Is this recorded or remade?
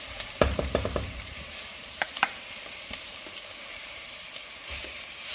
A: remade